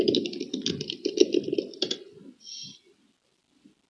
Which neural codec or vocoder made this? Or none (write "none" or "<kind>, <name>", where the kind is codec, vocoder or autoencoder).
none